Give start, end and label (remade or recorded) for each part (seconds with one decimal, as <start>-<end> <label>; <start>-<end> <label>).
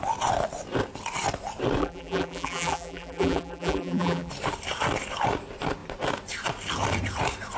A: 0.0-1.8 recorded; 1.8-4.3 remade; 4.3-7.6 recorded